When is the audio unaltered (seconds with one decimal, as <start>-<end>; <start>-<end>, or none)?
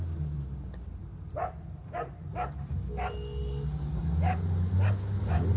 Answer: 0.0-5.6